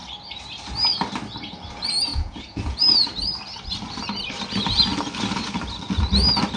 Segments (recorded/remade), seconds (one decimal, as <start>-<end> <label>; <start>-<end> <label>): 0.0-2.1 recorded; 2.1-2.8 remade; 2.8-6.6 recorded